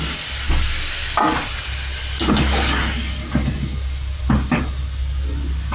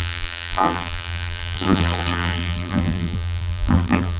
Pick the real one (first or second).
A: first